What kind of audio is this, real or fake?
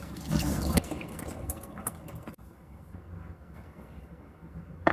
fake